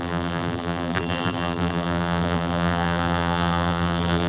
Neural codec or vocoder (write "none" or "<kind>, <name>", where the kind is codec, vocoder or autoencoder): vocoder, BigVGAN v2